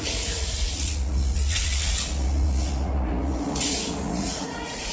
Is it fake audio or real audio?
fake